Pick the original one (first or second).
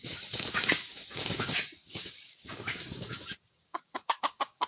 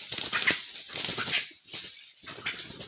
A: second